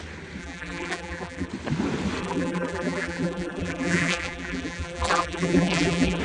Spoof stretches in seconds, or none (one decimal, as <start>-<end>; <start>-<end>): 0.4-1.5; 2.2-6.2